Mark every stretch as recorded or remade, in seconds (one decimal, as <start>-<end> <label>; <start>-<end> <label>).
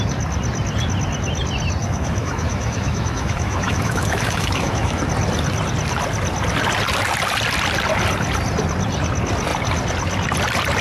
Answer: 0.0-1.8 recorded; 1.8-5.0 remade; 5.0-10.8 recorded